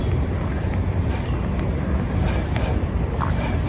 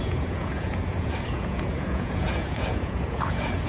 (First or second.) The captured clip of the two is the first